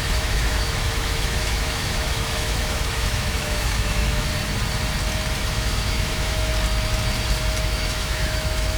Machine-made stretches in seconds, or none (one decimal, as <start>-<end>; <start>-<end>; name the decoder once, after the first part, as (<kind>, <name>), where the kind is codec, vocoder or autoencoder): 0.0-4.3 (autoencoder, DAC-VAE); 5.4-6.5; 7.6-8.8